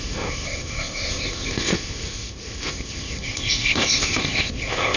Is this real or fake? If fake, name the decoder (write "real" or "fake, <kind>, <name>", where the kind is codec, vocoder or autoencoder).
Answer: fake, codec, ZipCodec